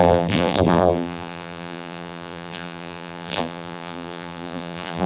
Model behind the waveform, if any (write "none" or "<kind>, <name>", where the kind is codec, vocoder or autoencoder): vocoder, BigVGAN v2